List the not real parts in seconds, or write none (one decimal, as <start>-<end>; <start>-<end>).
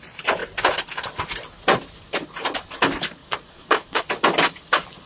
3.2-4.0